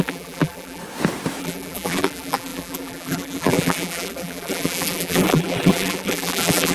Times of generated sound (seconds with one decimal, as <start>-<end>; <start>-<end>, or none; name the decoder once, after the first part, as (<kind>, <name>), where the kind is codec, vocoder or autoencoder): 0.0-0.8 (vocoder, BigVGAN v2); 1.4-6.7